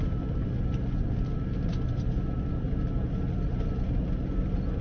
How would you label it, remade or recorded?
recorded